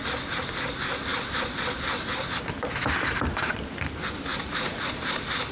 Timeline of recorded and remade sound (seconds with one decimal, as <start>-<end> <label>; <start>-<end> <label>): 0.0-4.3 recorded; 4.3-4.9 remade; 4.9-5.5 recorded